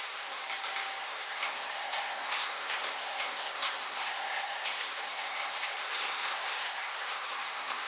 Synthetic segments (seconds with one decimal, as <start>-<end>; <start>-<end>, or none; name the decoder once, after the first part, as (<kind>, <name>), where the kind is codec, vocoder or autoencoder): 0.0-0.4 (codec, SNAC); 1.0-7.9